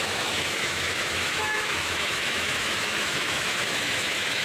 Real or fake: fake